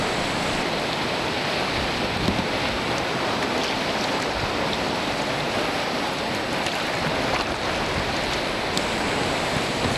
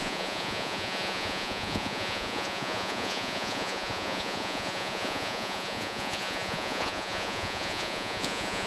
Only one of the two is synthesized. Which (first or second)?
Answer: second